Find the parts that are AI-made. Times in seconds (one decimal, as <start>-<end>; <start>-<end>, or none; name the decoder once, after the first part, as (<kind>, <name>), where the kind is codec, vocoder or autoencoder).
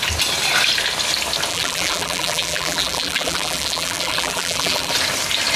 1.5-4.9 (vocoder, BigVGAN v2)